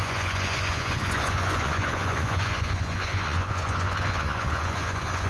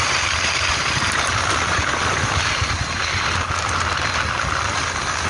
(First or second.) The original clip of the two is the second